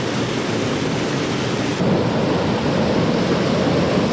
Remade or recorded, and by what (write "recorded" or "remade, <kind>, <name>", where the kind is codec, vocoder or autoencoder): recorded